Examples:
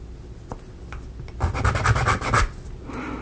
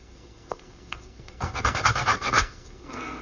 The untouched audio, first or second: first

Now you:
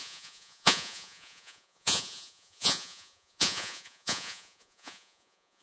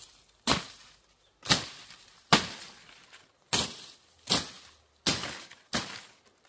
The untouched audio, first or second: second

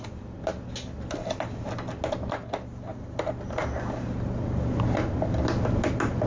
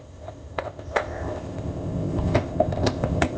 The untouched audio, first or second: first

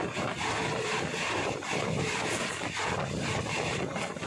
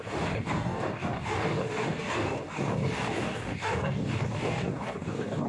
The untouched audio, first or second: first